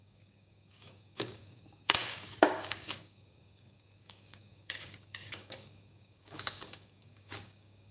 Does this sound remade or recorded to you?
remade